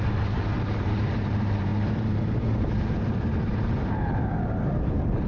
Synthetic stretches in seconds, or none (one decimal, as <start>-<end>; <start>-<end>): 0.0-5.3